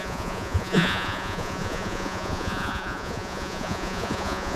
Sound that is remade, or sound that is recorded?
remade